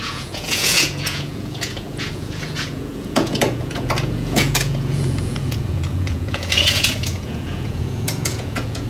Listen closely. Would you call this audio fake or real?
fake